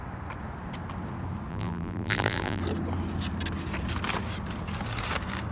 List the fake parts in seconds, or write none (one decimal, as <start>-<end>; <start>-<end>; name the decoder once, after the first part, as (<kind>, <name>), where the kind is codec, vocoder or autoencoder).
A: 1.5-2.6 (vocoder, BigVGAN v2)